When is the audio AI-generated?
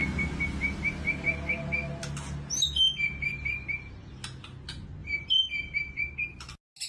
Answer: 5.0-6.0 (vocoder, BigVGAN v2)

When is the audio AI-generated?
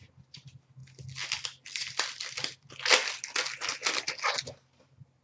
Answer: none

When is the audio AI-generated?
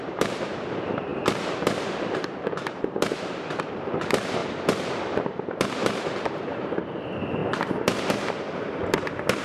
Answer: 0.0-4.4 (vocoder, BigVGAN v2); 5.0-9.4